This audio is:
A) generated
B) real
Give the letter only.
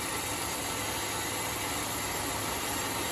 B